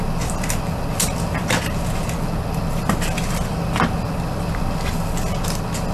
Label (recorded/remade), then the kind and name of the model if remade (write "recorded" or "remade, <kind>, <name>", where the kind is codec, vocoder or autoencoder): recorded